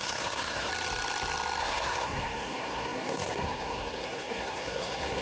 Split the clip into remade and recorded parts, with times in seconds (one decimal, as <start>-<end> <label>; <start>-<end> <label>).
0.0-0.7 remade; 0.7-1.6 recorded; 1.6-5.2 remade